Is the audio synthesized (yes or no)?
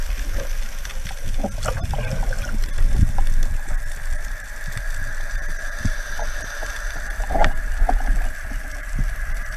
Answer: no